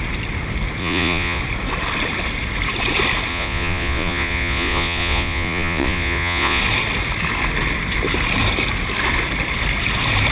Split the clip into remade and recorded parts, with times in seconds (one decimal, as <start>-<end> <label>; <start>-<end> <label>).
0.0-0.8 recorded; 0.8-1.4 remade; 1.4-3.3 recorded; 3.3-6.6 remade; 6.6-10.3 recorded